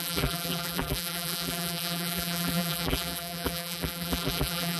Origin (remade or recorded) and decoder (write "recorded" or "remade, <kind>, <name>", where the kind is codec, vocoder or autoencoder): remade, vocoder, BigVGAN v2